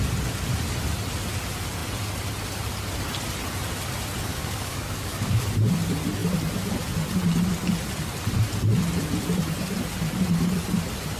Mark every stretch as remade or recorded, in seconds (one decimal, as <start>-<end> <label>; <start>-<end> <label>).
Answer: 0.0-4.3 recorded; 4.3-5.4 remade; 5.4-11.2 recorded